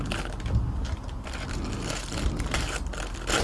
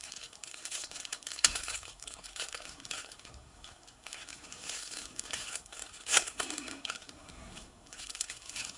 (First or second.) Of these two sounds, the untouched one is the first